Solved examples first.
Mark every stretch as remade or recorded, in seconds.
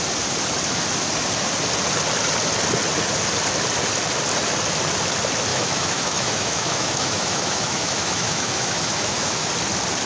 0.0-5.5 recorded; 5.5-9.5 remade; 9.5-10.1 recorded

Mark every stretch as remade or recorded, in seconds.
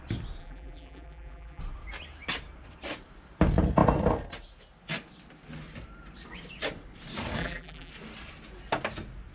0.0-0.4 recorded; 0.4-1.6 remade; 1.6-7.4 recorded; 7.4-7.9 remade; 7.9-9.3 recorded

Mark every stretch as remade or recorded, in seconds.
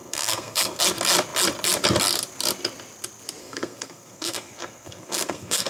0.0-0.8 remade; 0.8-3.4 recorded; 3.4-5.7 remade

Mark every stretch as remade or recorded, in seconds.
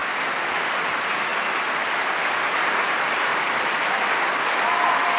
0.0-5.2 recorded